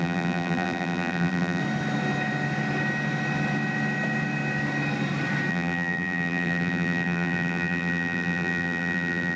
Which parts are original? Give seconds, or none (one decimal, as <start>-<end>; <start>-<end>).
1.6-5.5